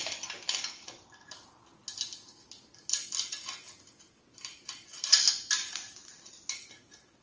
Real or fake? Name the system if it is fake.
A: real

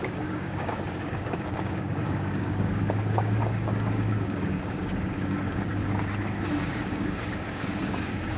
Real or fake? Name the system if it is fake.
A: fake, codec, DAC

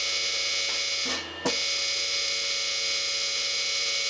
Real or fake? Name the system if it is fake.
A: real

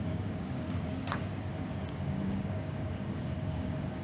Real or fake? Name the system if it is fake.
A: fake, codec, DAC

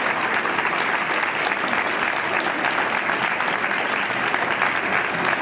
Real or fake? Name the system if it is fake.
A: real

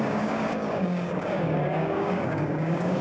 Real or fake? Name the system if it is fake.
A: fake, codec, DAC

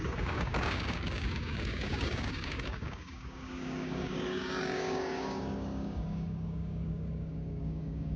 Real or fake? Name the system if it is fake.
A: fake, codec, DAC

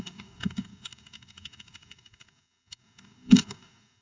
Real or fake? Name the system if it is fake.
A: fake, codec, DAC